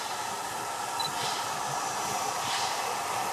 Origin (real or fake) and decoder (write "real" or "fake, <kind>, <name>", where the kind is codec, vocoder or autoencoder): fake, vocoder, BigVGAN v2